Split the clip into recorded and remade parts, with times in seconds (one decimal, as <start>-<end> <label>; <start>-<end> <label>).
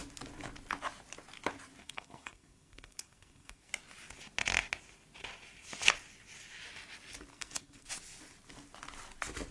0.0-1.8 recorded; 1.8-3.7 remade; 3.7-7.3 recorded; 7.3-7.9 remade; 7.9-9.5 recorded